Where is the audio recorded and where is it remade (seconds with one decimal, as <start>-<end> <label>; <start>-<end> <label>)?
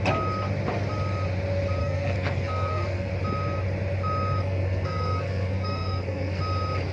0.0-1.8 recorded; 1.8-3.1 remade; 3.1-4.4 recorded; 4.4-6.4 remade; 6.4-6.9 recorded